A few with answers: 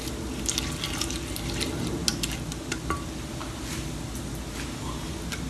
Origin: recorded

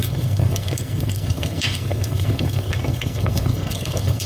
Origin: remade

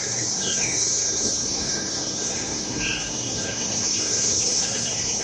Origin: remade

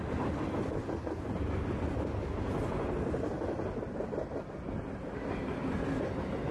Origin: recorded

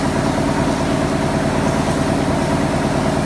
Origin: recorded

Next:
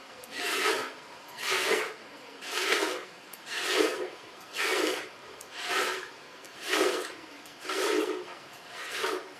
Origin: remade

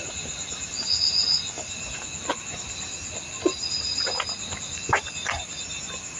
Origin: recorded